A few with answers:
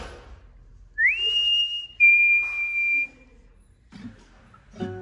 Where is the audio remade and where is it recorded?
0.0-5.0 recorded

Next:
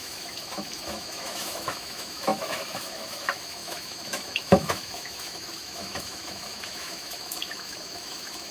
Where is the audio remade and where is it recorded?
0.0-8.5 remade

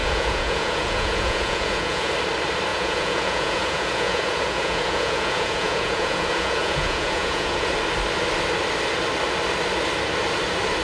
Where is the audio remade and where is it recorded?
0.0-2.1 remade; 2.1-2.7 recorded; 2.7-7.7 remade; 7.7-10.8 recorded

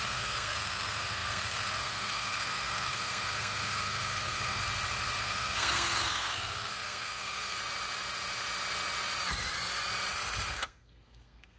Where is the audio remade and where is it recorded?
0.0-4.6 remade; 4.6-5.2 recorded; 5.2-7.6 remade; 7.6-10.5 recorded; 10.5-11.6 remade